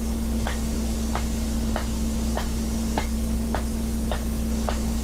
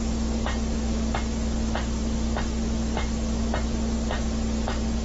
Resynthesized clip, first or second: first